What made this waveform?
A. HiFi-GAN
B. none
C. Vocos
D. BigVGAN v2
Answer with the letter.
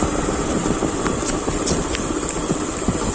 B